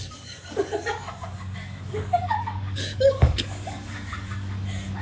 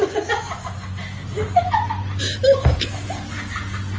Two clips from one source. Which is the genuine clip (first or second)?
second